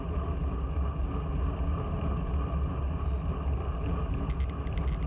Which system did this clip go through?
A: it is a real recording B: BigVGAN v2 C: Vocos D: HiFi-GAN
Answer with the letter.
A